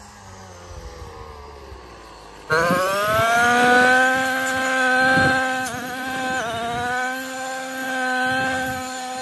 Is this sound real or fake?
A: real